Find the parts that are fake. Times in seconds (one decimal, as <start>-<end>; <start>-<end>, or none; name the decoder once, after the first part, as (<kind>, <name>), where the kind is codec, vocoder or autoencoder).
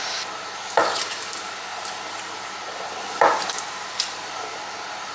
none